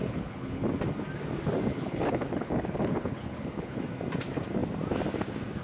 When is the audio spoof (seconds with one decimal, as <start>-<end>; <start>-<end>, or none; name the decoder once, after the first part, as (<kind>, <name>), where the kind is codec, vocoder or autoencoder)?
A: 0.0-0.7 (codec, HILCodec); 1.7-3.8